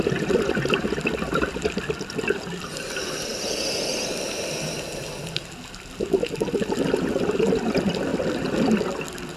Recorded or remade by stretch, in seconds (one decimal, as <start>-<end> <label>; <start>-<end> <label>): 0.0-3.3 recorded; 3.3-4.5 remade; 4.5-9.4 recorded

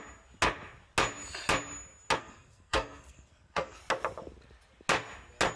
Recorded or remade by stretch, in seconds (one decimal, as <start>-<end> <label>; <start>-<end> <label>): 0.0-2.2 recorded; 2.2-3.8 remade; 3.8-5.6 recorded

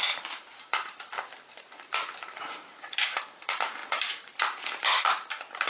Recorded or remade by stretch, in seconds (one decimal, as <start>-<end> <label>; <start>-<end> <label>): 0.0-5.7 remade

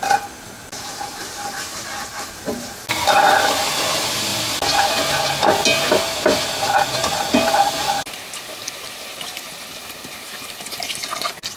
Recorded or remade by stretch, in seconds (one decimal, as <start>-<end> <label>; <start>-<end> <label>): 0.0-11.6 recorded

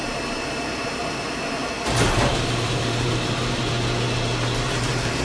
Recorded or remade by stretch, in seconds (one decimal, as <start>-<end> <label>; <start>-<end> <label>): 0.0-1.7 remade; 1.7-2.3 recorded; 2.3-3.6 remade; 3.6-5.2 recorded

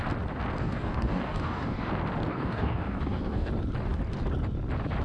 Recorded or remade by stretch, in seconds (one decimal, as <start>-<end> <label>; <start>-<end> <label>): 0.0-0.6 recorded; 0.6-1.9 remade; 1.9-2.3 recorded; 2.3-3.5 remade; 3.5-5.0 recorded

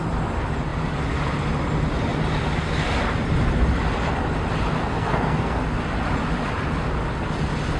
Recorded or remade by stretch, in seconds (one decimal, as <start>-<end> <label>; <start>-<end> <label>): 0.0-4.8 recorded; 4.8-5.6 remade; 5.6-7.8 recorded

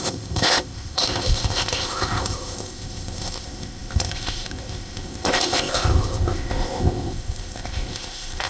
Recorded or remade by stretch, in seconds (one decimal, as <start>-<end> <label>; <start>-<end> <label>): 0.0-8.5 remade